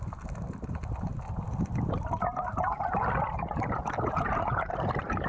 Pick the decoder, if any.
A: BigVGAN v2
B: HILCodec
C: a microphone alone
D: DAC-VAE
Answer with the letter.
C